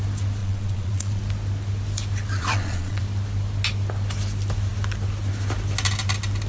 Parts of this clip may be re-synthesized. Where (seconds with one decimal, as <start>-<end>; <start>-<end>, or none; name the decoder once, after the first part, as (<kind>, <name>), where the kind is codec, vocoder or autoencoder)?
0.4-1.2 (vocoder, Vocos); 2.4-3.0